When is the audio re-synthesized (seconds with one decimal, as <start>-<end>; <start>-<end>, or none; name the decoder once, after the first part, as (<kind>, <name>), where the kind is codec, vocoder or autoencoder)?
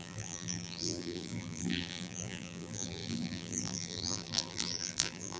0.0-5.4 (vocoder, BigVGAN v2)